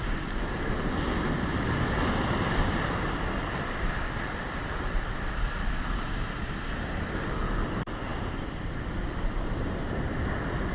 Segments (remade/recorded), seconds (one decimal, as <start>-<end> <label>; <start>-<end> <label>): 0.0-10.7 recorded